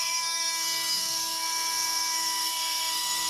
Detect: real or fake fake